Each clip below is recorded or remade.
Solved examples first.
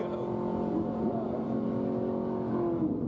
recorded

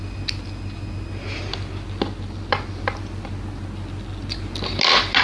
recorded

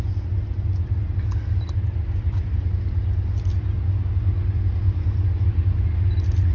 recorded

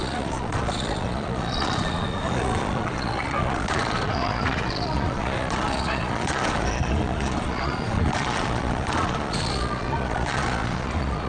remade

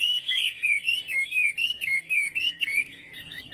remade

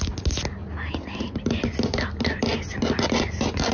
recorded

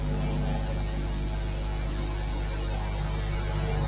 recorded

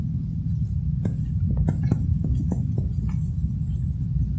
recorded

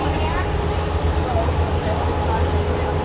recorded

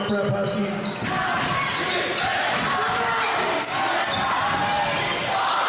recorded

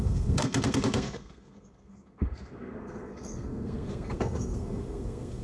remade